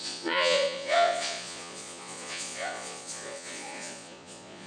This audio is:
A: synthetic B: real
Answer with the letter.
A